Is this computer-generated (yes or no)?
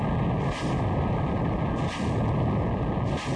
no